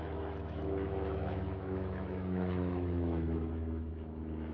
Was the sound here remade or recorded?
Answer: remade